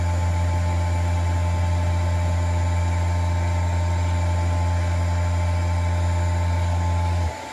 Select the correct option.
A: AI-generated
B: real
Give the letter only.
B